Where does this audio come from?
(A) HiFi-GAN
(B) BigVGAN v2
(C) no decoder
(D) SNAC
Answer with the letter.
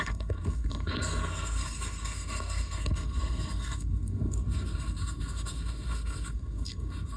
D